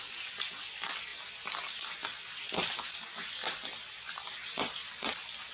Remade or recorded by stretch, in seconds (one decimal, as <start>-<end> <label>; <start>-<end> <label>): 0.0-5.5 recorded